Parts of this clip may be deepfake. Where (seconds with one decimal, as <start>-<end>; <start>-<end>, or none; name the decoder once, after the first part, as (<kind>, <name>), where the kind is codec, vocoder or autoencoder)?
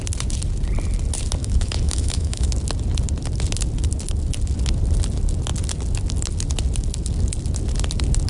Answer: 1.4-2.5 (autoencoder, DAC-VAE)